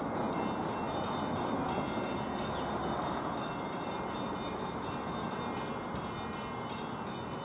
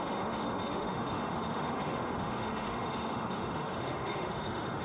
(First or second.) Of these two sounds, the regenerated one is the second